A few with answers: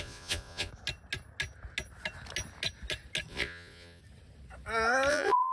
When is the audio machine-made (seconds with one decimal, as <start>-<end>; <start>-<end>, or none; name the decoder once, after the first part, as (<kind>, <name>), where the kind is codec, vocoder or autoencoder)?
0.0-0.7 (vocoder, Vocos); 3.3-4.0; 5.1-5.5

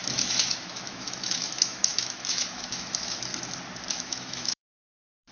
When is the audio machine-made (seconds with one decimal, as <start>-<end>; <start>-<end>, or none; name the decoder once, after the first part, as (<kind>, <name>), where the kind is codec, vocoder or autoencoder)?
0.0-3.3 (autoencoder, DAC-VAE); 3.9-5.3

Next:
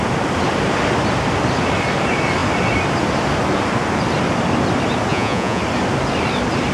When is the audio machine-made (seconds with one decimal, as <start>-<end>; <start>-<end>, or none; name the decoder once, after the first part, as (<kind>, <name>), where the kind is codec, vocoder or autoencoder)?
5.1-5.6 (vocoder, Vocos)

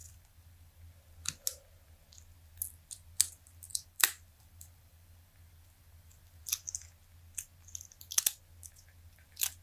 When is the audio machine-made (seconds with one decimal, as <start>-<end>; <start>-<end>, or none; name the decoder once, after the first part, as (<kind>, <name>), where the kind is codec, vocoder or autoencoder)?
0.0-0.8 (vocoder, BigVGAN v2); 3.7-6.4

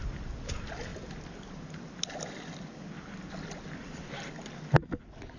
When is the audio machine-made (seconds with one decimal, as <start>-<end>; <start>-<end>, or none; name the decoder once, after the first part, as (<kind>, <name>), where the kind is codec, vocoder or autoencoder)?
none

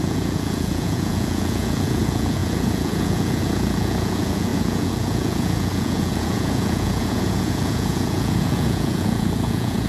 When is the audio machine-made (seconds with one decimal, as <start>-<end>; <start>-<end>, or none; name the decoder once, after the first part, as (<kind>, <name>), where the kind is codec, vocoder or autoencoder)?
0.0-9.9 (vocoder, Vocos)